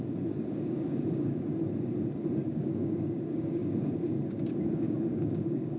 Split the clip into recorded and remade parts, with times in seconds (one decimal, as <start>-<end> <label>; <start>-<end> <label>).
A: 0.0-1.5 remade; 1.5-2.4 recorded; 2.4-5.8 remade

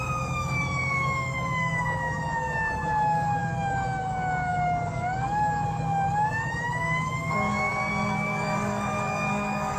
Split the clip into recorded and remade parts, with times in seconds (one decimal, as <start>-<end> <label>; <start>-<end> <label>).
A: 0.0-9.8 remade

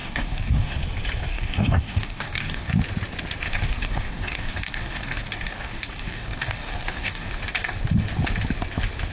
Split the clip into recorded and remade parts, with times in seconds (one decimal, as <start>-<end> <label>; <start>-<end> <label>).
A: 0.0-0.8 remade; 0.8-1.3 recorded; 1.3-2.7 remade; 2.7-3.5 recorded; 3.5-7.3 remade; 7.3-9.1 recorded

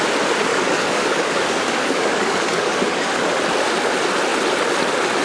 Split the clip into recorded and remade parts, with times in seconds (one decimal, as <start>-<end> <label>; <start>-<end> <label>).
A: 0.0-0.5 recorded; 0.5-3.1 remade; 3.1-5.2 recorded

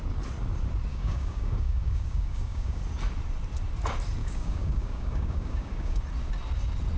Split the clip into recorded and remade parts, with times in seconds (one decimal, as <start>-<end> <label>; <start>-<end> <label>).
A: 0.0-0.9 recorded; 0.9-2.8 remade; 2.8-4.2 recorded; 4.2-6.0 remade; 6.0-7.0 recorded